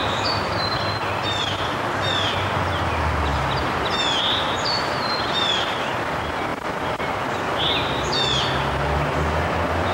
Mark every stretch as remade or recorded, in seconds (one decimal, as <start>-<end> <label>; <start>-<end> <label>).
0.0-2.0 remade; 2.0-3.3 recorded; 3.3-3.9 remade; 3.9-9.9 recorded